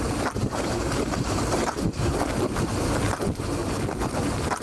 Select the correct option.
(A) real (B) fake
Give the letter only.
A